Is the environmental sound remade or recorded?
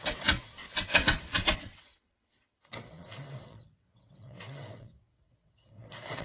remade